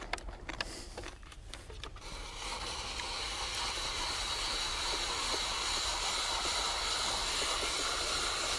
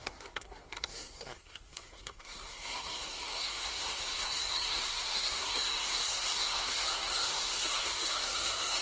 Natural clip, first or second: first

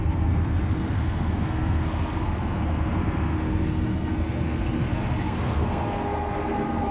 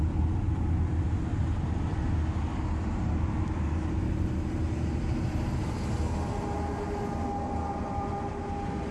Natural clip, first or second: second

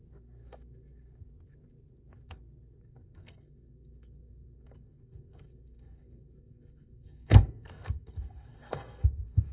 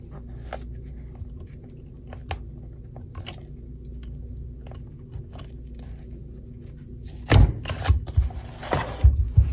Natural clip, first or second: second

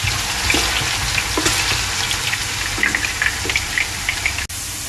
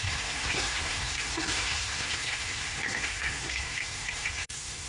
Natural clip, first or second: first